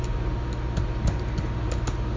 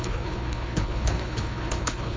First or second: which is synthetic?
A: second